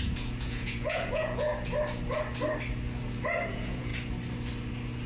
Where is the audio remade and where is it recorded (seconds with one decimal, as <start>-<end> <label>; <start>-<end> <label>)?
0.0-1.5 remade; 1.5-3.5 recorded; 3.5-3.9 remade; 3.9-5.1 recorded